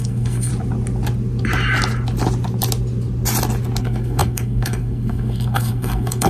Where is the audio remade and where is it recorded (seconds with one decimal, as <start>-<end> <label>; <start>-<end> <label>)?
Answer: 0.0-0.5 remade; 0.5-3.8 recorded; 3.8-6.3 remade